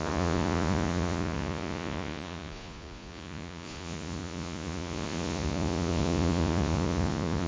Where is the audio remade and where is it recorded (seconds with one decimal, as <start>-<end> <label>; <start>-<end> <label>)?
0.0-7.5 remade